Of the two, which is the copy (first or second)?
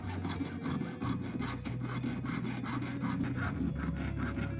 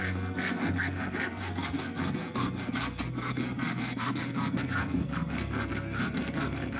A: second